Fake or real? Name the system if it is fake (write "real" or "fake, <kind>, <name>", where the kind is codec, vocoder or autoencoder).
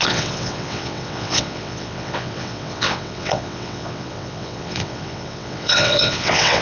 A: fake, vocoder, WaveNeXt